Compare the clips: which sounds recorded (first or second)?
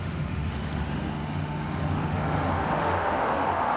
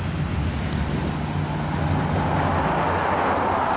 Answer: second